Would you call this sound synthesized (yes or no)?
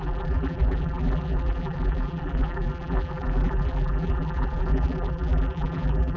yes